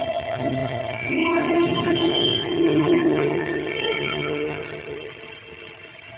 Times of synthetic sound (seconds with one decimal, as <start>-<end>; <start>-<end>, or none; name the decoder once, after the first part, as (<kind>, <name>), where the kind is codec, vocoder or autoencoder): 0.0-6.2 (vocoder, HiFi-GAN)